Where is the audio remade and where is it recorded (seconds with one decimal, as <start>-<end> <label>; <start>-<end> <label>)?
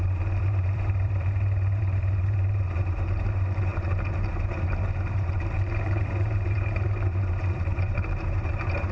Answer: 0.0-8.9 remade